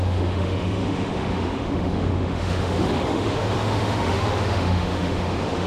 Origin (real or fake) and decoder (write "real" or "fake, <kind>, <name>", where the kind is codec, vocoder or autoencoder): fake, autoencoder, DAC-VAE